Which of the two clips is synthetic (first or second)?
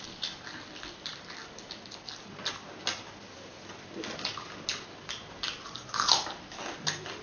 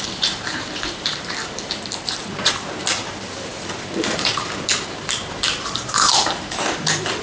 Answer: second